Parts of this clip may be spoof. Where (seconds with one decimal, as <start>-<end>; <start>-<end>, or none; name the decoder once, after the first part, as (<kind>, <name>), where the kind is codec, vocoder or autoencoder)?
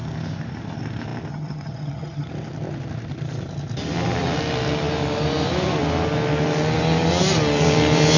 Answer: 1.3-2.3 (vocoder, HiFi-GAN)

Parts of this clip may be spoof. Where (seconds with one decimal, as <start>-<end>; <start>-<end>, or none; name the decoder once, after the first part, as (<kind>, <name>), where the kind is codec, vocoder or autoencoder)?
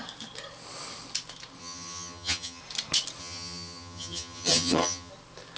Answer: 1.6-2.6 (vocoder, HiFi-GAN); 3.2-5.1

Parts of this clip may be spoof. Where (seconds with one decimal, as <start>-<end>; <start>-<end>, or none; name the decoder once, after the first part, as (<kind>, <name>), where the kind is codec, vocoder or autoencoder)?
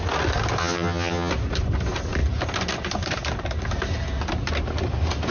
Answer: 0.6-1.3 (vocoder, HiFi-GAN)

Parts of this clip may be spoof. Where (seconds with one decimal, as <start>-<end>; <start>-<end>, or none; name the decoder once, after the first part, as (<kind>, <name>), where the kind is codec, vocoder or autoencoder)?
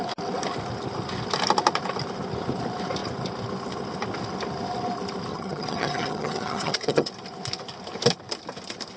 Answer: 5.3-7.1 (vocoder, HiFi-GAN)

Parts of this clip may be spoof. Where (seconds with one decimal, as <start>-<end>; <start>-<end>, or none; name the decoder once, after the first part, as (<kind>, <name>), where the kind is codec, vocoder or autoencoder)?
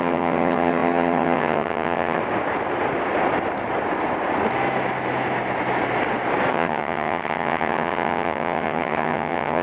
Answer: 0.0-2.2 (vocoder, HiFi-GAN); 6.5-9.6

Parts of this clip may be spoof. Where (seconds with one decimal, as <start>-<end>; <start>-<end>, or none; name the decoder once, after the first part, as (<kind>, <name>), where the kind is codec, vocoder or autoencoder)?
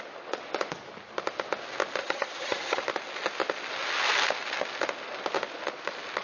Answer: 2.0-2.8 (vocoder, HiFi-GAN)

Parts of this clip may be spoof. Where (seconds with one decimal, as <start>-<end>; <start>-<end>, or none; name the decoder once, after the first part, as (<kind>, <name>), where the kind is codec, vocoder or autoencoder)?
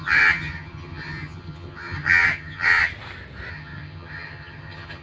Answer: 0.0-2.9 (vocoder, HiFi-GAN); 3.5-5.0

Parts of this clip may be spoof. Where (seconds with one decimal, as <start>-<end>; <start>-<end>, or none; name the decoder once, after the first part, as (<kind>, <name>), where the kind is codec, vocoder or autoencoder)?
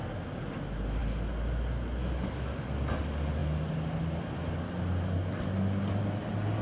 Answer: none